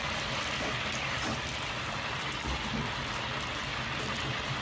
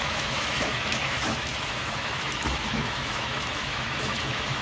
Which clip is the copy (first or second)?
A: second